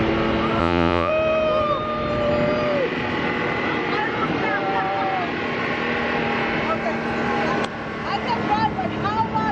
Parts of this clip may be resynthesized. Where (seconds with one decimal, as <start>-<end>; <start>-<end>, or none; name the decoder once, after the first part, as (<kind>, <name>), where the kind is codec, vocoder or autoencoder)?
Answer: 0.6-1.1 (vocoder, Vocos)